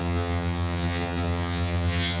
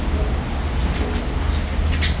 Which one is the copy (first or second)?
first